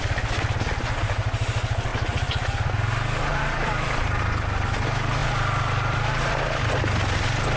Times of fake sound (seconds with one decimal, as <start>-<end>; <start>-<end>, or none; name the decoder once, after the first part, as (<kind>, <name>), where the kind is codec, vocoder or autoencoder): 1.9-2.7 (vocoder, BigVGAN v2); 3.3-4.2; 5.2-6.6